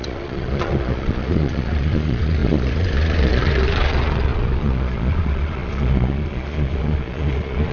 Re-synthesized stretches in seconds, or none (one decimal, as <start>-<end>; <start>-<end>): 0.0-7.7